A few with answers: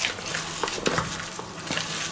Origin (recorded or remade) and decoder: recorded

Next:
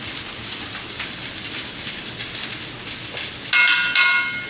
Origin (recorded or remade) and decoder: recorded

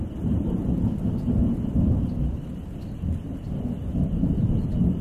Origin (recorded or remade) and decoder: recorded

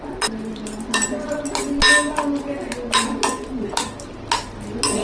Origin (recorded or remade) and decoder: recorded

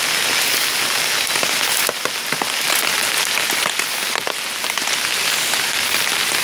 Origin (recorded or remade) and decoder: recorded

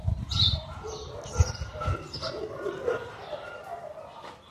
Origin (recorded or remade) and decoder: remade, vocoder, BigVGAN v2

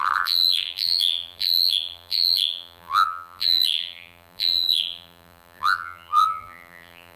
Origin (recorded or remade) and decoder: remade, vocoder, BigVGAN v2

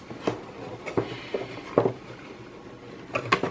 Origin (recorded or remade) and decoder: recorded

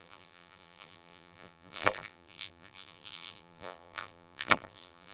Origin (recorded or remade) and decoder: remade, vocoder, BigVGAN v2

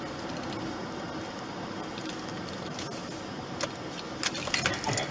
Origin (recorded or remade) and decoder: recorded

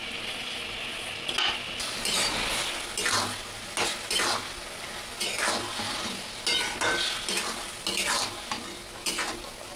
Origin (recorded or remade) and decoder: recorded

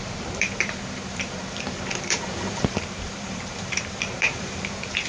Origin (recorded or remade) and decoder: remade, vocoder, BigVGAN v2